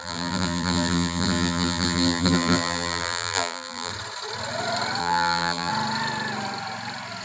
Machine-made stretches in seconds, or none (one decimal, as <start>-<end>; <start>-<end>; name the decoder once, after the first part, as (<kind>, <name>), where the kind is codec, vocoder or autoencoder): 0.0-3.9 (vocoder, BigVGAN v2); 5.0-5.7

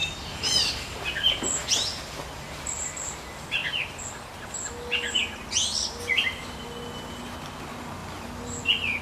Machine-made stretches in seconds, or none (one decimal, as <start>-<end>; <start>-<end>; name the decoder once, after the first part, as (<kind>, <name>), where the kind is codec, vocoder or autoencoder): 0.0-1.0 (vocoder, BigVGAN v2); 1.6-2.8; 8.0-8.6

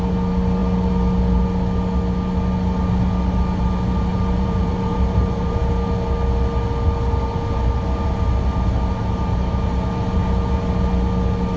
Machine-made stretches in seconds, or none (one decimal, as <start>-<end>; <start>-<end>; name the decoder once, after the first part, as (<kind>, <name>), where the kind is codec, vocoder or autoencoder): 4.1-5.6 (vocoder, BigVGAN v2)

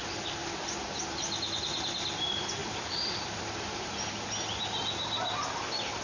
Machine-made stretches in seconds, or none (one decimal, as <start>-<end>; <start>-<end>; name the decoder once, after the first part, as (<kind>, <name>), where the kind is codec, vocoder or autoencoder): 2.6-4.1 (vocoder, BigVGAN v2)

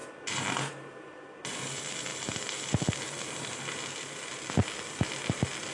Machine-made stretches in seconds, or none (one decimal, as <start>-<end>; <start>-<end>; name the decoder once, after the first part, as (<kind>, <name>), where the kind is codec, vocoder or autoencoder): none

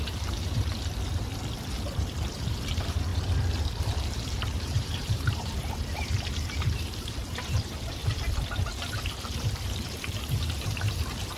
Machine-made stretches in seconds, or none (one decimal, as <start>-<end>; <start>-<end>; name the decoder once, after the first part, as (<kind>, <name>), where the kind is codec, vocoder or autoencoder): 0.0-0.7 (vocoder, BigVGAN v2); 2.1-3.1; 3.8-8.0; 9.1-11.4

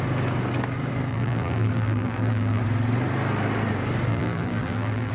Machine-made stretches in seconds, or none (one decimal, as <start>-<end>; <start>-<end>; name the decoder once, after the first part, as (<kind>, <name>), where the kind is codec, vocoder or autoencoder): 1.1-2.6 (vocoder, BigVGAN v2); 4.1-5.1

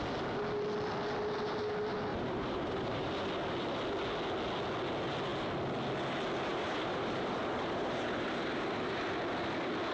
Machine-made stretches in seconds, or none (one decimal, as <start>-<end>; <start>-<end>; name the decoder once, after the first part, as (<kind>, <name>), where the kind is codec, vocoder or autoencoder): 2.1-3.1 (vocoder, BigVGAN v2); 6.5-9.0